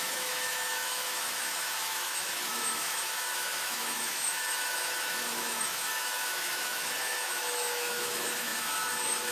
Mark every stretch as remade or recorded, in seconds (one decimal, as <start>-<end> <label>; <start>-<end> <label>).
0.0-9.3 remade